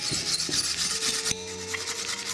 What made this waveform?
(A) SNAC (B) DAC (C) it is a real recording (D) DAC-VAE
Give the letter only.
C